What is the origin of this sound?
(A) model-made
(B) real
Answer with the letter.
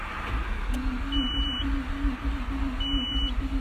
B